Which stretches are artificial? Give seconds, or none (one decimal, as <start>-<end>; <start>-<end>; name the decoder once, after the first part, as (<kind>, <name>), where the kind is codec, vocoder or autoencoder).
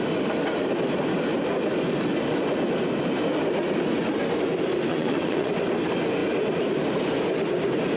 4.9-5.5 (vocoder, WaveNeXt)